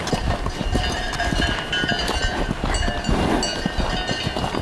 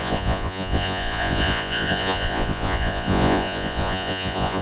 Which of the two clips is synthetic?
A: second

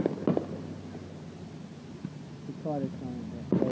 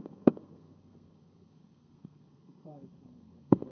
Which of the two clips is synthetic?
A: second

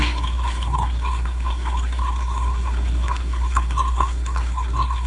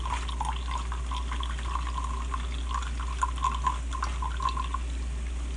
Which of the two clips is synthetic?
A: first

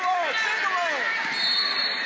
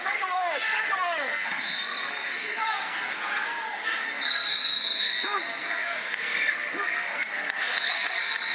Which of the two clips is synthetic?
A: second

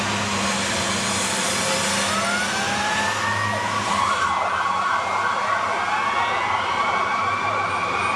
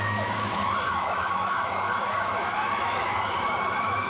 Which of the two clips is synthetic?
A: second